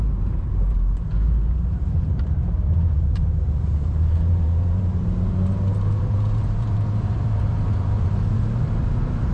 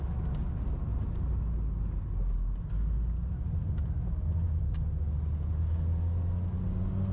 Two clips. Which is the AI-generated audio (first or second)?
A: first